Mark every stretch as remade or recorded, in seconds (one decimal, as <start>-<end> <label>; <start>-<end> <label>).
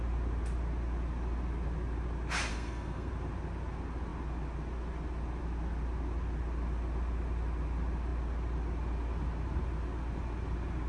0.0-2.5 recorded; 2.5-3.1 remade; 3.1-10.9 recorded